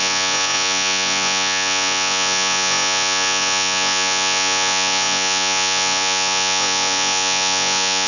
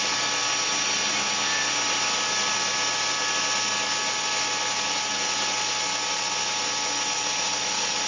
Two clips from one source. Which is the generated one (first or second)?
first